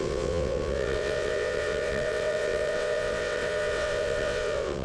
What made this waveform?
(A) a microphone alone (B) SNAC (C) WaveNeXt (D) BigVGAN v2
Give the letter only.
C